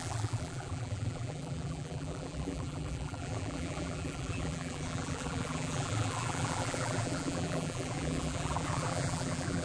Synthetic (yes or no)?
yes